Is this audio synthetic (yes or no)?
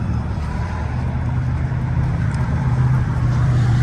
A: yes